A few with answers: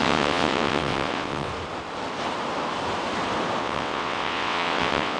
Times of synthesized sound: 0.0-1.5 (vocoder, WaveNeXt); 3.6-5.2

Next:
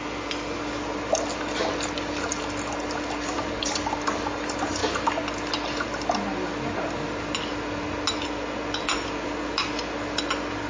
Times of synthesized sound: none

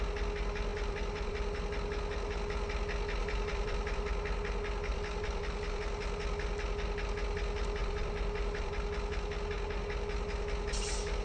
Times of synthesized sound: 0.7-1.6 (vocoder, BigVGAN v2); 3.2-4.1; 4.9-5.8; 7.8-8.7

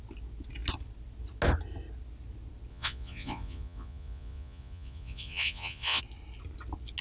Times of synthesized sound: 2.7-6.0 (vocoder, Vocos)

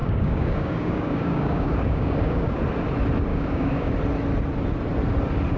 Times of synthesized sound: 0.0-2.6 (codec, DAC); 3.3-3.9

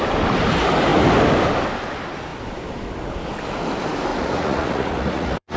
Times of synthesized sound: 4.1-5.6 (vocoder, Vocos)

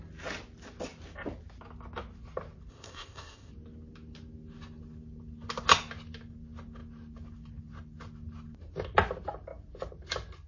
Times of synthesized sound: 2.7-3.5 (codec, ZipCodec)

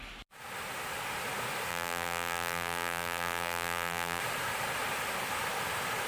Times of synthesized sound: 1.7-4.2 (vocoder, BigVGAN v2)